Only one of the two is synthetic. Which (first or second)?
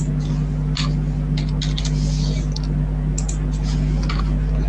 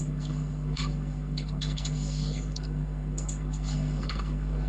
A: second